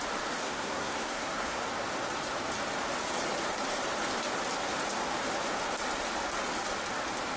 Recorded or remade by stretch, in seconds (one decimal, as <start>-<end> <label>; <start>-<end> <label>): 0.0-0.4 recorded; 0.4-1.6 remade; 1.6-7.4 recorded